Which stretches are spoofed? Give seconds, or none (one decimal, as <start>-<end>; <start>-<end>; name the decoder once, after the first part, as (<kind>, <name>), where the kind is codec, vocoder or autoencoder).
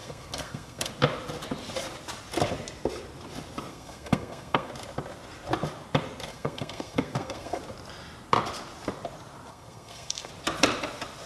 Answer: 0.0-0.9 (codec, SNAC); 3.7-4.7; 6.3-7.6; 9.5-10.3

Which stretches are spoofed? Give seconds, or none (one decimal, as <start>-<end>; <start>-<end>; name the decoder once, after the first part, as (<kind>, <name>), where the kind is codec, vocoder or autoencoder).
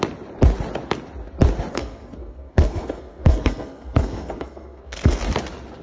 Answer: 1.7-5.2 (codec, SNAC)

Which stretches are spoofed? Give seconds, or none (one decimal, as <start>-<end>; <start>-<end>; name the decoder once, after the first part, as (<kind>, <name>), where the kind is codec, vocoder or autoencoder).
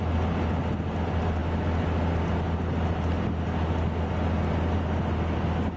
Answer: none